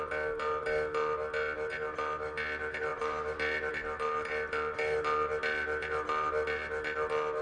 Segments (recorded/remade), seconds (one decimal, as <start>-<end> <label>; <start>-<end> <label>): 0.0-7.4 recorded